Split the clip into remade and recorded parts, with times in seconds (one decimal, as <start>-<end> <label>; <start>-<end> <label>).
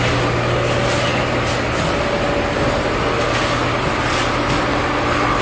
0.0-5.4 recorded